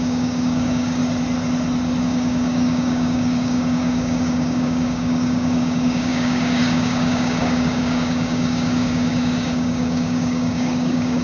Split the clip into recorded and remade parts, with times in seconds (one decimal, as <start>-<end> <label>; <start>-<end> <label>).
0.0-1.0 remade; 1.0-2.0 recorded; 2.0-11.2 remade